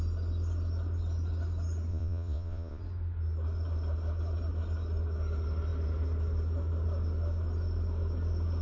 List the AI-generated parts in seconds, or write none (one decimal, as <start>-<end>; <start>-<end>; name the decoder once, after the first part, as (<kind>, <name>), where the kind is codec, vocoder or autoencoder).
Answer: 1.9-2.8 (vocoder, Vocos)